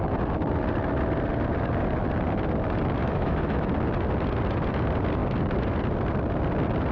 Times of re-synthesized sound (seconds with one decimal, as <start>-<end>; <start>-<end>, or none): 3.0-3.7

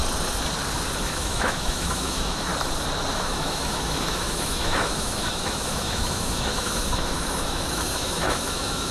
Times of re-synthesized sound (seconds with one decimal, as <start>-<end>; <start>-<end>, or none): 1.0-2.5; 3.1-8.9

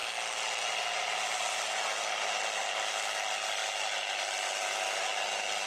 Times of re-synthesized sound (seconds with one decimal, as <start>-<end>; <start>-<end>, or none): none